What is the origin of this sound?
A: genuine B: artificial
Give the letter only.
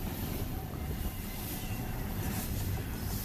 B